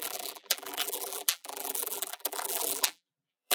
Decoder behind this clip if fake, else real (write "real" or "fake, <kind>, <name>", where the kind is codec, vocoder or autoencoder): fake, vocoder, BigVGAN v2